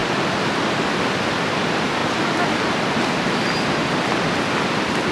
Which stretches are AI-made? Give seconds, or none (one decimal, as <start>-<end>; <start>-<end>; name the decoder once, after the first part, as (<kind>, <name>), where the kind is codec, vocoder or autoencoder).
none